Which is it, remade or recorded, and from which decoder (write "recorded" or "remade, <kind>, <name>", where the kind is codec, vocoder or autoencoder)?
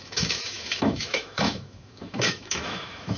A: remade, autoencoder, DAC-VAE